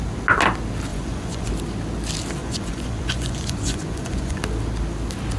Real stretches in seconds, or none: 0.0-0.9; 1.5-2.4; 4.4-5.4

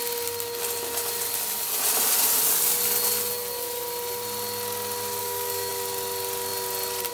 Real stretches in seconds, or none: 0.0-5.2; 5.7-7.1

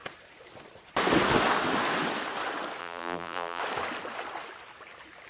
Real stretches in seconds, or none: 0.0-2.8; 3.6-5.3

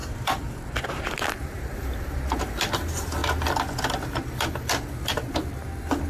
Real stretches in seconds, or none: 3.2-6.1

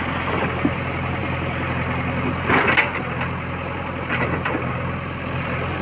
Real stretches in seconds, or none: 0.0-5.8

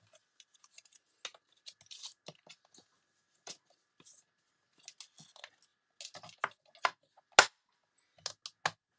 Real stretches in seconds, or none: 0.0-9.0

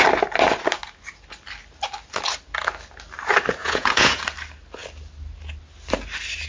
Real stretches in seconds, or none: 0.0-3.6; 4.2-6.5